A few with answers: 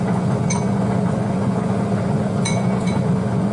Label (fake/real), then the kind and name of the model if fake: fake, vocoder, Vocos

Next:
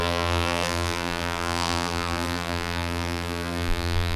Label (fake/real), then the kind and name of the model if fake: fake, vocoder, BigVGAN v2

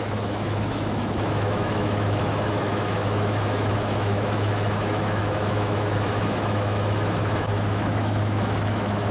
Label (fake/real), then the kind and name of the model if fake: fake, autoencoder, DAC-VAE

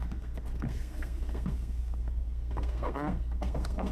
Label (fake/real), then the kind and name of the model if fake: fake, codec, SNAC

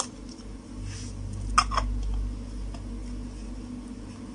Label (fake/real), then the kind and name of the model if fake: real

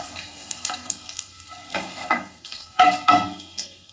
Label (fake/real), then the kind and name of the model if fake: fake, codec, SNAC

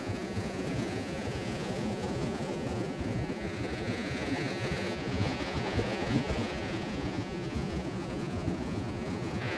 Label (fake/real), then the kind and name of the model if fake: fake, vocoder, Vocos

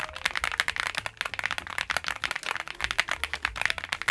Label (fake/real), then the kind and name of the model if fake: real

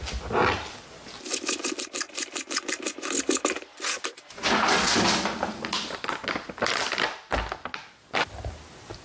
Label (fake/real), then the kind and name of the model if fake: real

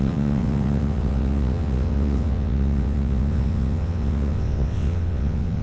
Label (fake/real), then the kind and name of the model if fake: fake, vocoder, WaveNeXt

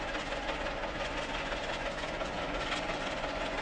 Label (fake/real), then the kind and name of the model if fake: fake, vocoder, Vocos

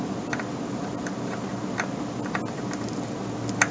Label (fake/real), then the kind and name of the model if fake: real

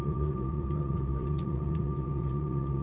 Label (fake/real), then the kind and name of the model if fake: fake, vocoder, Vocos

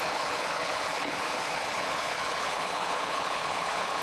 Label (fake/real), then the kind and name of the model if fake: fake, codec, HILCodec